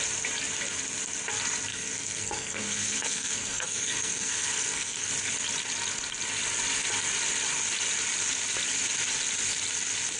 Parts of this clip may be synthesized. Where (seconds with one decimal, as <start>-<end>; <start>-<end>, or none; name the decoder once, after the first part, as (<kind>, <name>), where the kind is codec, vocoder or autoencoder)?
1.7-5.1 (codec, SNAC)